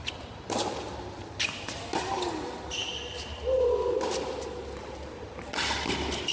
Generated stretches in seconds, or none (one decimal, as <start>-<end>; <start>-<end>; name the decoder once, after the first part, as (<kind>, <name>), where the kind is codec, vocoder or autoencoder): none

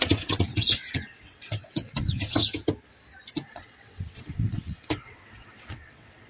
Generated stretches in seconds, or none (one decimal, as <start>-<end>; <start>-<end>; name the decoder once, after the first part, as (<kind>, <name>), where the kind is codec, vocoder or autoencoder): 0.0-2.4 (vocoder, WaveNeXt); 3.5-6.3

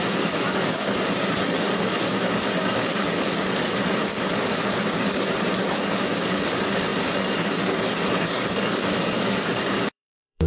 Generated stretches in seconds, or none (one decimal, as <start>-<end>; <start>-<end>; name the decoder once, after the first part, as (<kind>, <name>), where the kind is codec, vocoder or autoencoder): 0.0-10.5 (codec, DAC)